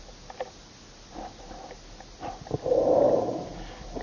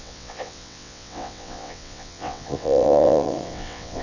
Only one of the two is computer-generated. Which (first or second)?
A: second